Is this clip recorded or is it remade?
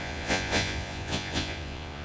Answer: remade